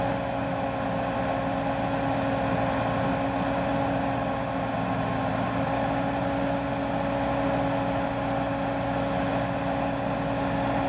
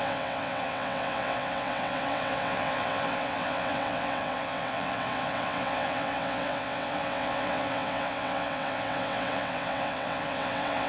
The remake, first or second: second